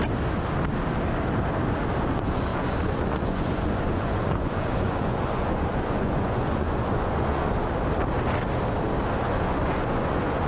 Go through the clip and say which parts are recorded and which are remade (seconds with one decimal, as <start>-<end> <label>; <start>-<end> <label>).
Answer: 0.0-2.1 recorded; 2.1-7.6 remade; 7.6-9.2 recorded; 9.2-10.5 remade